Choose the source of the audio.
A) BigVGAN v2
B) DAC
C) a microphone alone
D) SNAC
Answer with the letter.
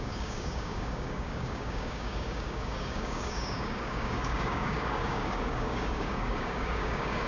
B